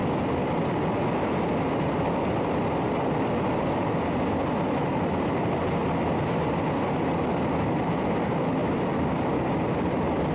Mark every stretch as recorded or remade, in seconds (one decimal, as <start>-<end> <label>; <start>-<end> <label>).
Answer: 0.0-10.3 recorded